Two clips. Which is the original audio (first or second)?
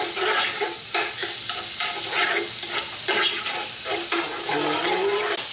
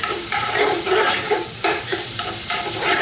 first